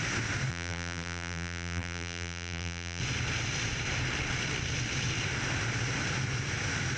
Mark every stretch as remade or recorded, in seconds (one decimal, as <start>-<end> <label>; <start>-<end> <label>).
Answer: 0.0-0.5 recorded; 0.5-3.0 remade; 3.0-7.0 recorded